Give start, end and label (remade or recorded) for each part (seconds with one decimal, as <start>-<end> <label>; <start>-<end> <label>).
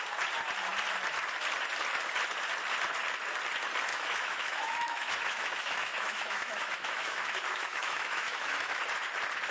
0.0-3.9 recorded; 3.9-8.8 remade; 8.8-9.5 recorded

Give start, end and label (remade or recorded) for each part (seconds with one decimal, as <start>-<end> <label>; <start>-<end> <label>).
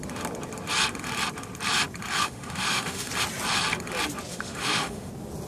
0.0-2.2 recorded; 2.2-3.1 remade; 3.1-4.3 recorded; 4.3-5.1 remade; 5.1-5.5 recorded